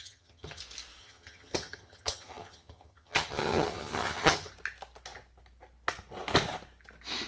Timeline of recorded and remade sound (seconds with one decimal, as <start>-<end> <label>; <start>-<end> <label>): 0.0-0.6 remade; 0.6-1.0 recorded; 1.0-4.5 remade; 4.5-7.3 recorded